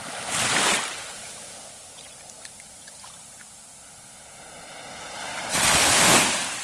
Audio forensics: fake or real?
real